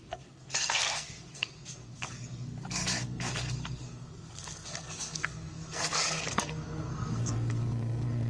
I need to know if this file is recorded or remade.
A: remade